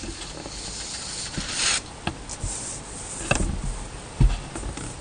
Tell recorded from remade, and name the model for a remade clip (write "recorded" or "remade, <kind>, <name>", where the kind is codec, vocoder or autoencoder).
recorded